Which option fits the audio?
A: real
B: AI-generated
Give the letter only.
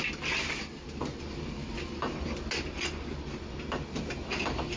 A